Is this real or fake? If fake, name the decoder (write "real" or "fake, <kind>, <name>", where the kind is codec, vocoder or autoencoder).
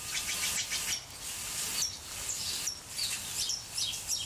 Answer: fake, vocoder, BigVGAN v2